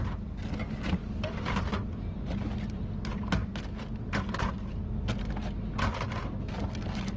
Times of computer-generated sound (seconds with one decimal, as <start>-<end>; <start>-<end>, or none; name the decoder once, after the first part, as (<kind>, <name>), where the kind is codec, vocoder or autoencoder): none